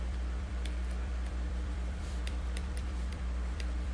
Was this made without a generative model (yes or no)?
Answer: no